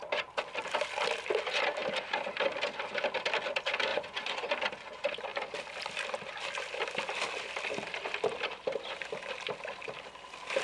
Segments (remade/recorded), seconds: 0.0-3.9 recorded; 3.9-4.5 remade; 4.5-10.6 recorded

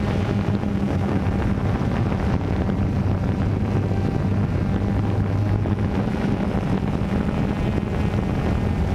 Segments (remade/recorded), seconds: 0.0-0.7 recorded; 0.7-1.2 remade; 1.2-8.9 recorded

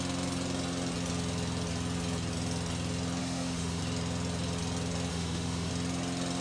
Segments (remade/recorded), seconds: 0.0-3.2 recorded; 3.2-3.8 remade; 3.8-5.1 recorded; 5.1-5.7 remade; 5.7-6.4 recorded

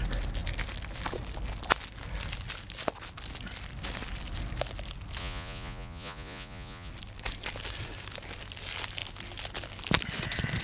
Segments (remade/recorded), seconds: 0.0-5.2 recorded; 5.2-6.9 remade; 6.9-10.6 recorded

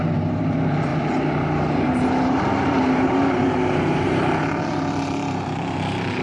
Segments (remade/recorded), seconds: 0.0-6.2 remade

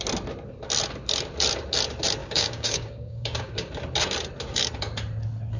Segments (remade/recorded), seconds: 0.0-2.2 recorded; 2.2-3.7 remade; 3.7-5.6 recorded